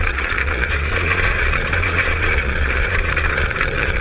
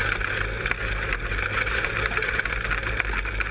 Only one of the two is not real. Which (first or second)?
first